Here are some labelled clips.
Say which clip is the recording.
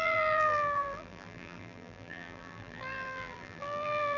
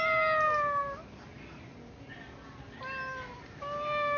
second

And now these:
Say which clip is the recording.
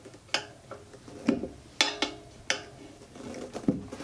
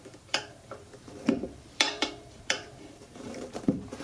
first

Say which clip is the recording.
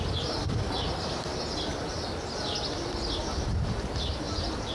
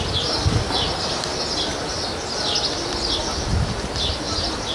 second